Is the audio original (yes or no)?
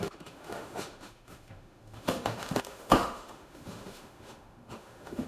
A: no